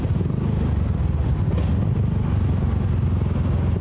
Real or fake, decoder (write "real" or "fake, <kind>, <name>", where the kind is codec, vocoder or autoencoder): real